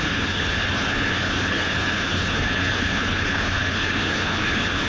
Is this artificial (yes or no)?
yes